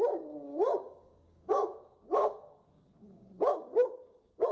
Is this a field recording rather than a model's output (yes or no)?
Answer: no